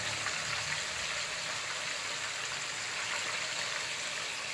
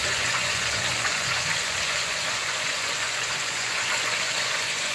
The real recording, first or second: first